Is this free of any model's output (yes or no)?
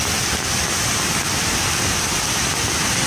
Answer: yes